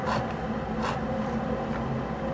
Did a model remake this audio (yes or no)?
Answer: no